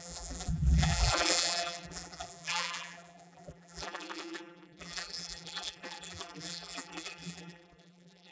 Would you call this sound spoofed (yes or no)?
yes